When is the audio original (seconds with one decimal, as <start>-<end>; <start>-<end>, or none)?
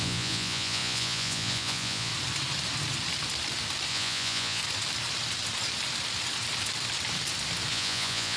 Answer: 2.1-3.9; 4.6-7.7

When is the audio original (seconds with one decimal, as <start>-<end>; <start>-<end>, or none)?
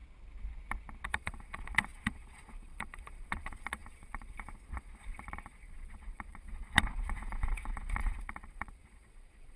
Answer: 0.0-1.1